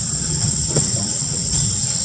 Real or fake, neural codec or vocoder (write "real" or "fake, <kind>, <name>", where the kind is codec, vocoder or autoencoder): fake, vocoder, WaveNeXt